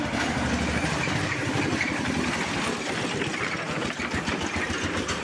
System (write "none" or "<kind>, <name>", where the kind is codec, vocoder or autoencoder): vocoder, BigVGAN v2